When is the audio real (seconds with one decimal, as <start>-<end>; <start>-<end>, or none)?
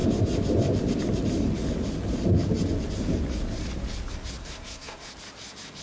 0.0-4.4; 5.1-5.8